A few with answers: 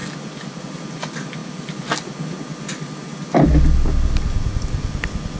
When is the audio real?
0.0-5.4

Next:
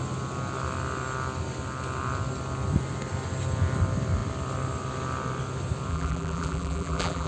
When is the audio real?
0.0-5.9

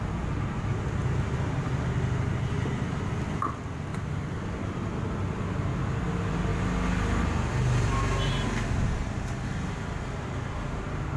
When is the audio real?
0.0-11.2

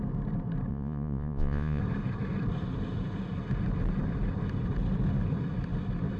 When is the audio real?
0.0-0.7; 1.8-6.2